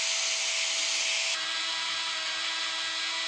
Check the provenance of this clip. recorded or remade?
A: recorded